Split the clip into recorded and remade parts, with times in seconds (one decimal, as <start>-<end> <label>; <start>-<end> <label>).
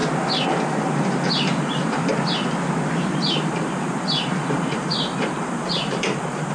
0.0-0.7 recorded; 0.7-2.1 remade; 2.1-2.9 recorded; 2.9-6.5 remade